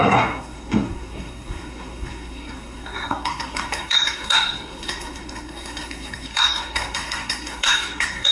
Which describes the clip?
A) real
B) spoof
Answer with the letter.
B